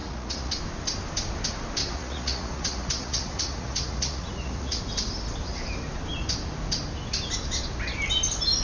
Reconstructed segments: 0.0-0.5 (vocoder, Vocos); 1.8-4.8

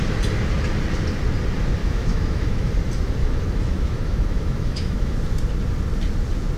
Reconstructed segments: 1.8-2.7 (autoencoder, DAC-VAE); 3.2-5.2

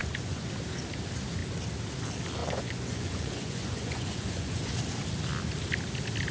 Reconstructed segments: 0.0-0.5 (vocoder, Vocos); 2.4-4.7

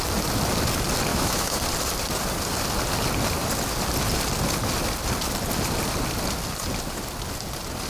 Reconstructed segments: 1.1-1.6 (autoencoder, DAC-VAE)

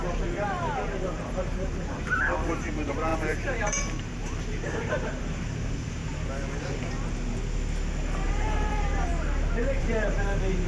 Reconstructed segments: 0.0-6.0 (vocoder, BigVGAN v2); 8.3-9.1; 9.8-10.7

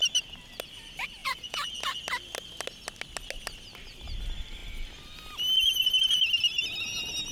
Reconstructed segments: 1.2-2.0 (vocoder, Vocos)

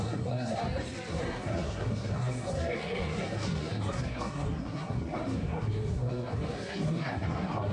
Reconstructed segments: 0.0-0.6 (codec, SNAC); 1.1-7.7

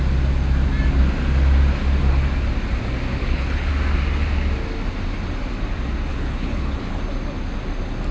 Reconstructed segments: 3.1-3.7 (codec, HILCodec); 6.1-7.0